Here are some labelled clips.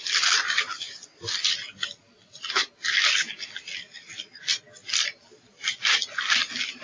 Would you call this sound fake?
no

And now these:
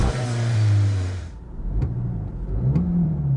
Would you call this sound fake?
yes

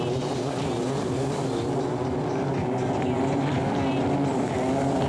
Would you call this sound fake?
no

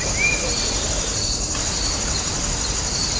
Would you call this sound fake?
no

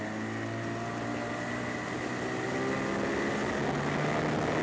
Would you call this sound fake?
no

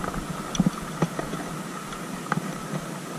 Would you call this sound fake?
no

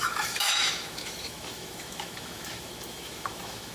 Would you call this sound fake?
yes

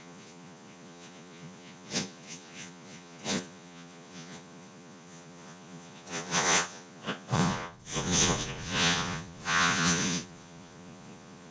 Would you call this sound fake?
yes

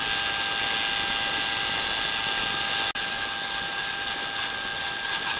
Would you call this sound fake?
no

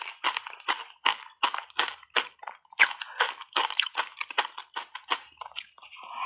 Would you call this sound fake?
no